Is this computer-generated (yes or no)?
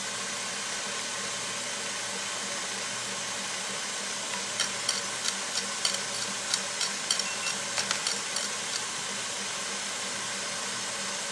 no